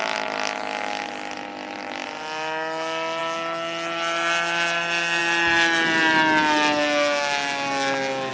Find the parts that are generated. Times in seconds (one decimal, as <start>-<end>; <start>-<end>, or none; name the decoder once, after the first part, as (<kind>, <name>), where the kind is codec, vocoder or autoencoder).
none